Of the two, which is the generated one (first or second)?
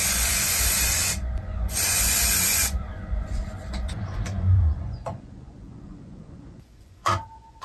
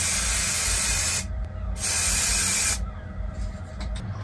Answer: first